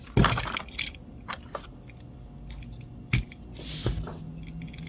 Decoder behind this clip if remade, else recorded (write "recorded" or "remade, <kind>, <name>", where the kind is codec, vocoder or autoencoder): recorded